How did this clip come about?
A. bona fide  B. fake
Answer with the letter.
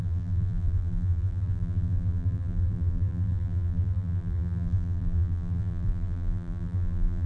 B